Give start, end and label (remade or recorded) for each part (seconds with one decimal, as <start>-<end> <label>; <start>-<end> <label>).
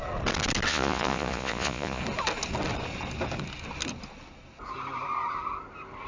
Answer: 0.0-0.7 recorded; 0.7-2.0 remade; 2.0-6.1 recorded